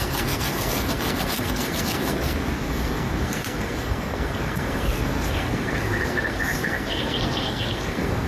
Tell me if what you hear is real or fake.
fake